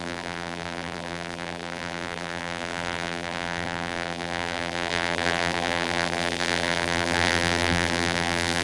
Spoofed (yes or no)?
yes